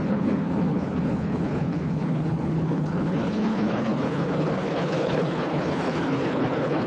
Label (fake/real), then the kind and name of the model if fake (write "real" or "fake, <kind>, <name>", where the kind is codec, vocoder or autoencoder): fake, codec, HILCodec